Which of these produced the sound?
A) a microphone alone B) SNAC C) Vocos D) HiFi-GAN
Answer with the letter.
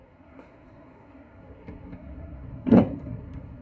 B